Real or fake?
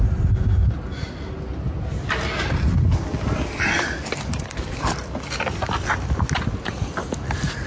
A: real